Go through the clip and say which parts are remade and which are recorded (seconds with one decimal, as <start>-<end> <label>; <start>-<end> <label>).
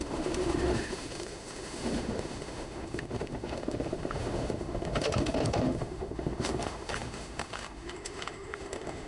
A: 0.0-9.1 remade